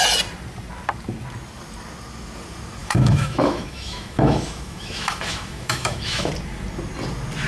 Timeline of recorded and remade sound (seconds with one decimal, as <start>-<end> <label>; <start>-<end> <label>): 0.0-2.8 recorded; 2.8-6.3 remade; 6.3-7.5 recorded